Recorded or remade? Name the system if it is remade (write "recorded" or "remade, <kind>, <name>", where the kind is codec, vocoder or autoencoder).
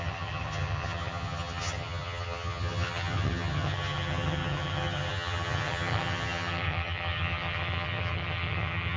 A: remade, vocoder, HiFi-GAN